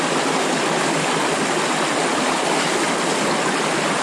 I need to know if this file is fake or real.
real